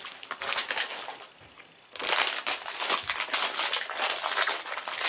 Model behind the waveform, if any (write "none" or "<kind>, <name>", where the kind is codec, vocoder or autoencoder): none